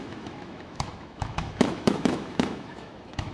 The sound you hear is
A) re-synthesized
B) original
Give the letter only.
A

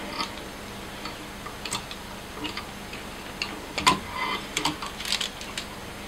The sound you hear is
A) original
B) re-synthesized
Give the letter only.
A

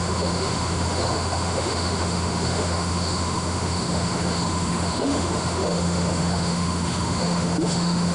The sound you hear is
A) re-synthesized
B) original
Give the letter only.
A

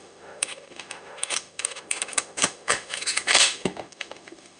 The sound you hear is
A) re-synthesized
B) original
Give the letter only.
A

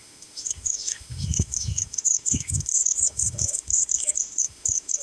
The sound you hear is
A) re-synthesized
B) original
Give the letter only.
A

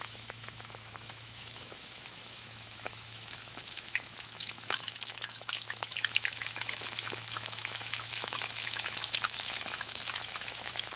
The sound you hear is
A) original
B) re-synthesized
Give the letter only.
B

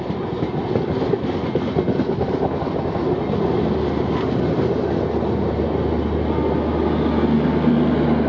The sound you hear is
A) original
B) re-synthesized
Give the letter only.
A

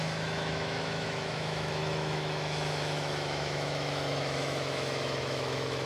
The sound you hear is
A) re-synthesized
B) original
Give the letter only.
A